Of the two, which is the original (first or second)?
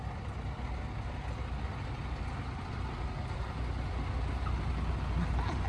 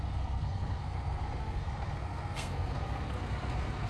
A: first